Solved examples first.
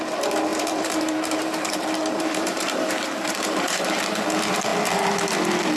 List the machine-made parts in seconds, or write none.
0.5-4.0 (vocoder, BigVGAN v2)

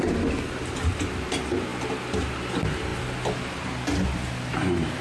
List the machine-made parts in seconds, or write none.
1.7-2.5 (vocoder, BigVGAN v2); 2.9-3.6

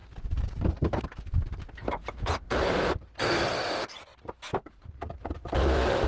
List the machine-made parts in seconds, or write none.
2.0-5.6 (vocoder, BigVGAN v2)

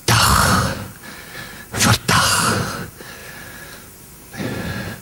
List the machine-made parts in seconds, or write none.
none

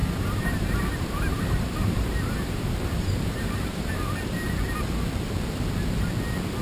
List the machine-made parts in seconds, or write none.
0.0-4.0 (vocoder, BigVGAN v2)